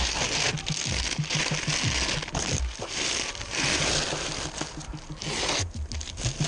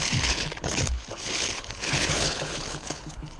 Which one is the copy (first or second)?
second